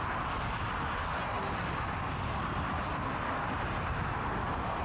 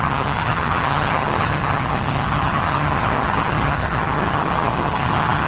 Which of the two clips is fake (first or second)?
second